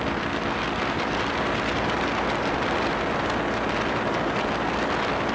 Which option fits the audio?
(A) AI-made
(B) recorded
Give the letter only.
B